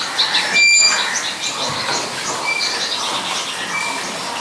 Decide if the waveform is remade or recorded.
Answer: recorded